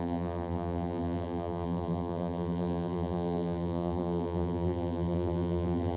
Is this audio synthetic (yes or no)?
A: yes